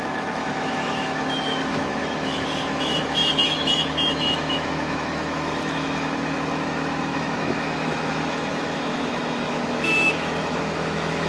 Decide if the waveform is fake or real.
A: fake